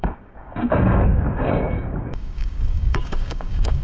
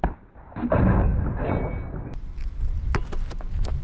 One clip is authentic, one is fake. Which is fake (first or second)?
first